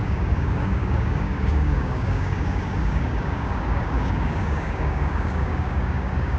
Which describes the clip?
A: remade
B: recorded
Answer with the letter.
A